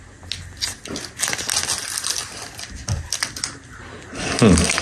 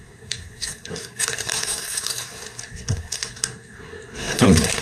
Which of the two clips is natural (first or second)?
first